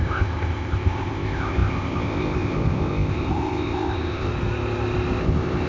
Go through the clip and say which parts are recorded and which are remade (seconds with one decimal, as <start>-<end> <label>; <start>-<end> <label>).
0.0-4.3 remade; 4.3-5.2 recorded; 5.2-5.7 remade

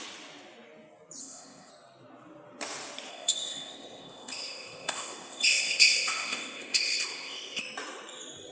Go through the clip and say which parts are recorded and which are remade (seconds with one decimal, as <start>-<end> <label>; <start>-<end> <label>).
0.0-1.2 recorded; 1.2-1.7 remade; 1.7-3.1 recorded; 3.1-7.6 remade; 7.6-8.5 recorded

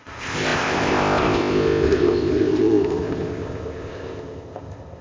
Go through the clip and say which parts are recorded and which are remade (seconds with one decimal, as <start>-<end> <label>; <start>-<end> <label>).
0.0-5.0 remade

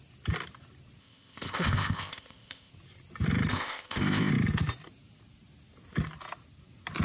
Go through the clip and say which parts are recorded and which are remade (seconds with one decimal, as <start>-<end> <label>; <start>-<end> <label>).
0.0-1.0 recorded; 1.0-2.7 remade; 2.7-3.5 recorded; 3.5-4.3 remade; 4.3-7.0 recorded

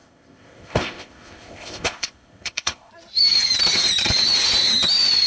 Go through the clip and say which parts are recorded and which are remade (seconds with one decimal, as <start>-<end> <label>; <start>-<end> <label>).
0.0-2.9 remade; 2.9-5.3 recorded

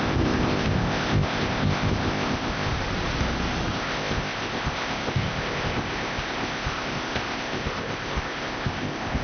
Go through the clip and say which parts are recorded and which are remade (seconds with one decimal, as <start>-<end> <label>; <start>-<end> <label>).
0.0-2.7 remade; 2.7-3.7 recorded; 3.7-9.2 remade

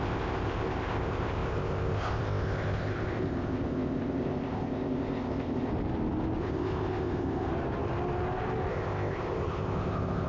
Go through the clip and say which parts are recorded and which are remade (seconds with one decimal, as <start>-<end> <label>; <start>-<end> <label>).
0.0-5.7 remade; 5.7-6.4 recorded; 6.4-7.5 remade; 7.5-8.7 recorded; 8.7-10.3 remade